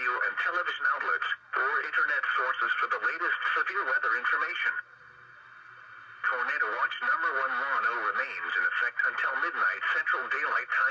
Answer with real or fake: real